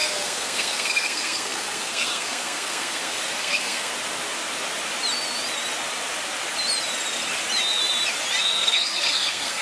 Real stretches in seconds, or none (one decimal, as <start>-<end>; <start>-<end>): 3.9-8.4